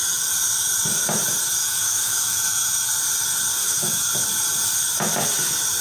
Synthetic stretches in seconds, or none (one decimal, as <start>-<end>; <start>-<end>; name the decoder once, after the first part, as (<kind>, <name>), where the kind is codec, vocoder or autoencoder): 1.6-2.9 (autoencoder, DAC-VAE); 3.6-4.1